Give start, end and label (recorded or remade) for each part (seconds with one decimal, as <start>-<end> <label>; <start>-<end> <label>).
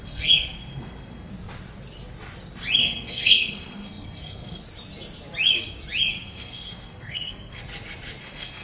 0.0-1.3 remade; 1.3-2.8 recorded; 2.8-4.6 remade; 4.6-6.1 recorded; 6.1-7.6 remade; 7.6-8.2 recorded; 8.2-8.6 remade